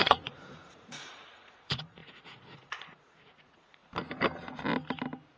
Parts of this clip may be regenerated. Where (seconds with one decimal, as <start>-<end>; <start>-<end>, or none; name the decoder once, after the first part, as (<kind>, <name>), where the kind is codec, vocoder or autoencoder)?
0.0-3.8 (vocoder, Vocos)